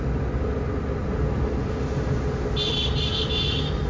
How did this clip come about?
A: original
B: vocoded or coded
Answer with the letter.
A